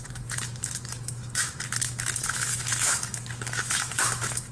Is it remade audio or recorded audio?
remade